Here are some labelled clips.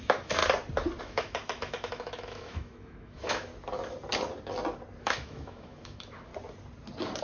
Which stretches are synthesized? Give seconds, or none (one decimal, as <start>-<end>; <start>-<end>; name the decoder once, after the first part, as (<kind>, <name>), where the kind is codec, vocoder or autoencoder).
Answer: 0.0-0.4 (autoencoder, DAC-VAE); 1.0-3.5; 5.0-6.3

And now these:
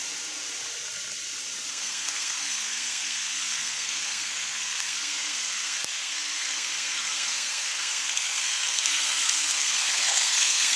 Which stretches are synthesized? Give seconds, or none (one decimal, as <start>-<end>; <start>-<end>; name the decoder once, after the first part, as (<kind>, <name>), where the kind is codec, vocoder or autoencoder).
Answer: 1.7-10.8 (codec, SNAC)

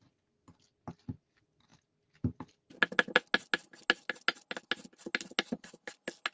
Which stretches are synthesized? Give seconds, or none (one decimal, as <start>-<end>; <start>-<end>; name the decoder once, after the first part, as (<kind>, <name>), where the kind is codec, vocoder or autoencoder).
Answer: none

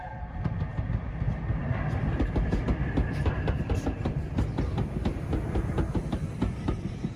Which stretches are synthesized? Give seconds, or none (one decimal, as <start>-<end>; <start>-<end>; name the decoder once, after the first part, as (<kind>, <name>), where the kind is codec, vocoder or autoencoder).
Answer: none

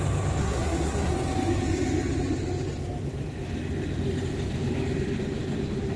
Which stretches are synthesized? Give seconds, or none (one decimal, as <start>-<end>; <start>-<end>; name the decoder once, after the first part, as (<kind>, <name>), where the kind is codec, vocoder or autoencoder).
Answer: 0.4-1.1 (codec, SNAC)

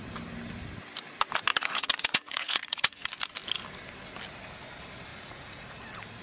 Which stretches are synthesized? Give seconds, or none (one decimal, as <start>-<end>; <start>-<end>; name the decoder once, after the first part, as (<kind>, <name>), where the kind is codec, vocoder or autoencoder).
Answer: 1.5-3.1 (vocoder, Vocos); 5.1-5.7

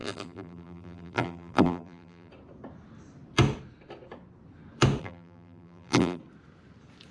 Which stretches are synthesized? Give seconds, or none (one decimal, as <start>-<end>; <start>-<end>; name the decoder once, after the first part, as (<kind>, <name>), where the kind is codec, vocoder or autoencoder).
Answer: 0.0-2.3 (vocoder, BigVGAN v2); 5.0-6.2